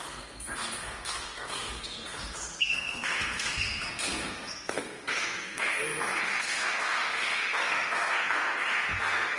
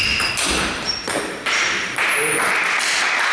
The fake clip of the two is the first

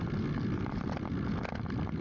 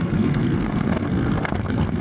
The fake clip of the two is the second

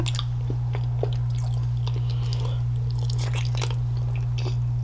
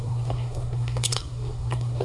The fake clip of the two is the second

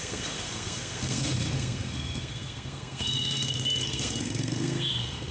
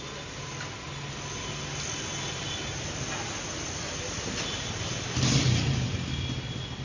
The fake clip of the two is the first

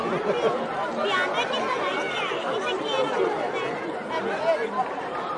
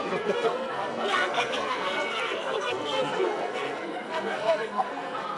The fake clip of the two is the second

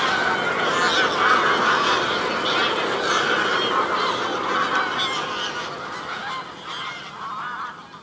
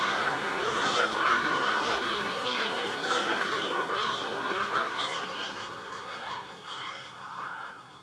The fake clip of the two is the second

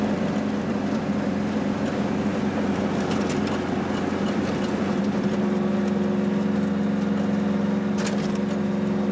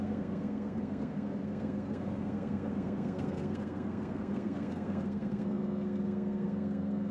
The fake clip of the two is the second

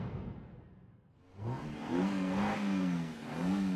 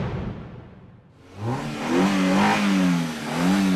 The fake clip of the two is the first